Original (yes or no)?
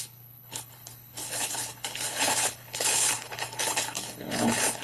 no